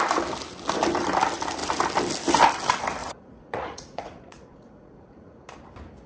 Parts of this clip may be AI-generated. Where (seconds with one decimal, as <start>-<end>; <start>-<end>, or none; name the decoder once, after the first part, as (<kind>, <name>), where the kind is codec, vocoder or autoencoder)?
3.0-5.4 (vocoder, Vocos)